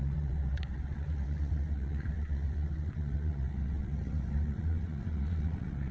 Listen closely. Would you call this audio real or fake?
fake